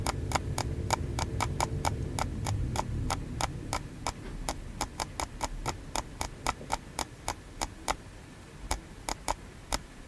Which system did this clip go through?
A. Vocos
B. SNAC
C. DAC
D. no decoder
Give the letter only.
D